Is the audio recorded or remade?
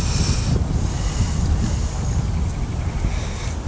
recorded